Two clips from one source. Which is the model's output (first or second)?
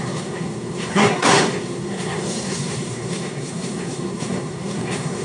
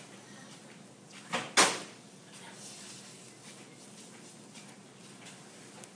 first